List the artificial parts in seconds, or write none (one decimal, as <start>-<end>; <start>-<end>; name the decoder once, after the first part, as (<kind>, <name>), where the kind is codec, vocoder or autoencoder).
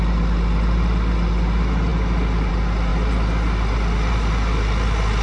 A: none